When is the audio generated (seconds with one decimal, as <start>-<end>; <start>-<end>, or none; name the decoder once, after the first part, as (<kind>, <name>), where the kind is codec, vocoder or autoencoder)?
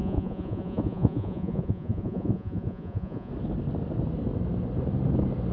0.0-3.3 (vocoder, Vocos)